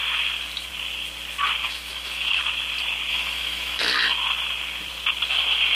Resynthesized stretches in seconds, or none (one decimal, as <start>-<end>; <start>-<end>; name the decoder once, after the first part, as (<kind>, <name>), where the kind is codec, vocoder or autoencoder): 1.6-2.4 (autoencoder, DAC-VAE); 3.1-3.8